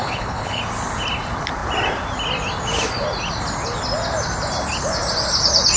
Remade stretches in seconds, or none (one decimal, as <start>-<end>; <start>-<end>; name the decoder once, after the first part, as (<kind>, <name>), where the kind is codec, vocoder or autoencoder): 0.0-0.6 (codec, HILCodec)